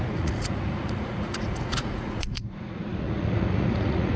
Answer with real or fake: fake